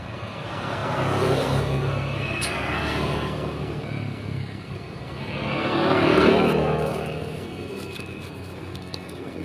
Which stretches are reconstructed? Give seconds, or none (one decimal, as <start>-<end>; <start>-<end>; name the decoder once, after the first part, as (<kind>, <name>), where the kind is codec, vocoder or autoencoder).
0.0-9.4 (codec, SNAC)